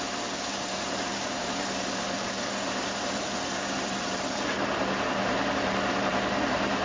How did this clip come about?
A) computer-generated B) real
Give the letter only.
A